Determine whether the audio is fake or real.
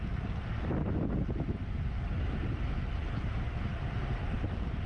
real